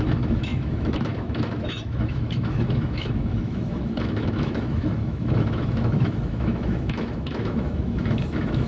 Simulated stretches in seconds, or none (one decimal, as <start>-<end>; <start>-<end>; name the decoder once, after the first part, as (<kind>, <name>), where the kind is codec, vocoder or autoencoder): 0.0-8.7 (autoencoder, DAC-VAE)